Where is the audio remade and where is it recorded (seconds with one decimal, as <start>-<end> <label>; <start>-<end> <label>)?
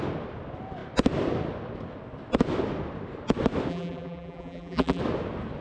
0.0-3.7 recorded; 3.7-5.0 remade; 5.0-5.6 recorded